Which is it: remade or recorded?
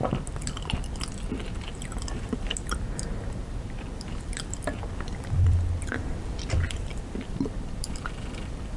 remade